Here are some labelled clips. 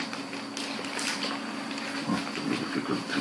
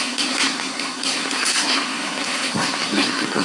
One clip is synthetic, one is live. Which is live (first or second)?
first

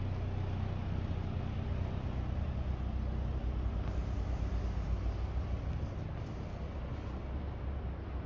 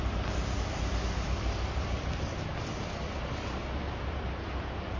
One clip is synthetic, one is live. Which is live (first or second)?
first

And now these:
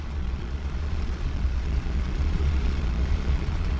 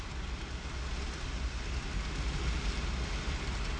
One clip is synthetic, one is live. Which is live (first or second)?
second